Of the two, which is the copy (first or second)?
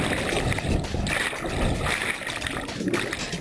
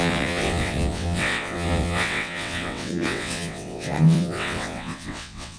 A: second